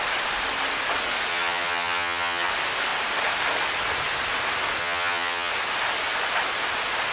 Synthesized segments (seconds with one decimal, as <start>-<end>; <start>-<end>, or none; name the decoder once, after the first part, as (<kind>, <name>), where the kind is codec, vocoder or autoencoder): 1.3-2.5 (vocoder, HiFi-GAN); 4.8-5.5